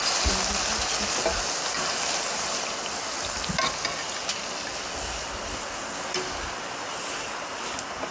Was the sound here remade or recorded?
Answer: recorded